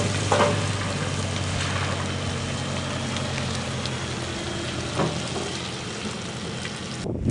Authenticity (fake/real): real